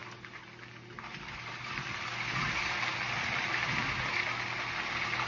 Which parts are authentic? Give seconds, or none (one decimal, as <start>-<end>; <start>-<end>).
0.0-5.3